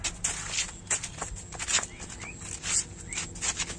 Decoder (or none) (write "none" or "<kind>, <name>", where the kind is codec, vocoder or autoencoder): none